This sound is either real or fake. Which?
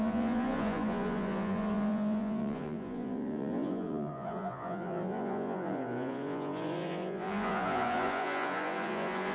fake